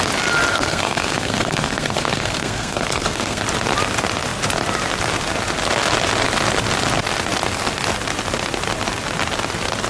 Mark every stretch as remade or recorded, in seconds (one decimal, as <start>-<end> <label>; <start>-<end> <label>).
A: 0.0-0.5 recorded; 0.5-3.4 remade; 3.4-9.9 recorded